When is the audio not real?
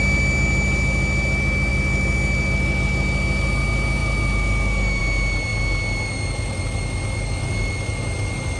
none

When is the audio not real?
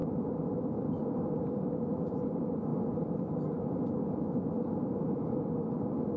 none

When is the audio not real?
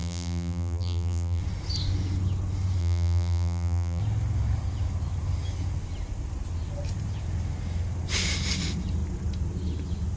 0.0-1.4 (vocoder, BigVGAN v2); 2.8-4.0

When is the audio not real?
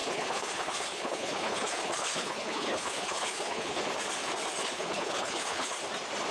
0.0-3.8 (codec, HILCodec); 4.6-5.8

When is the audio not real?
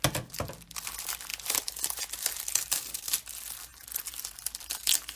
1.3-2.0 (vocoder, BigVGAN v2)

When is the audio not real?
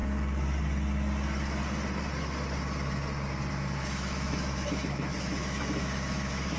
3.5-6.6 (autoencoder, DAC-VAE)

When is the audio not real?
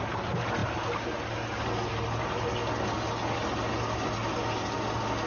none